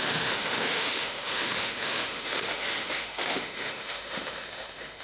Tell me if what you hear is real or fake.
fake